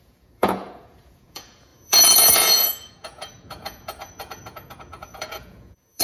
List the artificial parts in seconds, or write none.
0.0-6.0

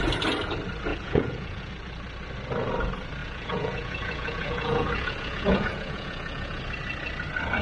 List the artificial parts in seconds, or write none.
0.9-1.7; 3.2-6.6

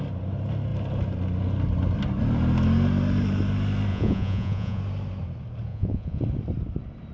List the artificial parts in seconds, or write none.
3.9-4.8; 5.7-6.2

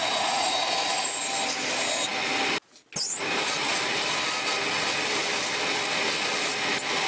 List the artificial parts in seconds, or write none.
0.0-1.2

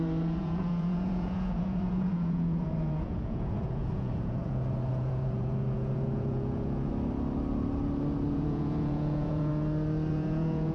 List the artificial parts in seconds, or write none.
0.0-6.9; 8.3-9.5; 10.1-10.7

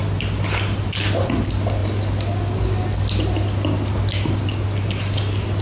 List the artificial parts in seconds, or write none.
none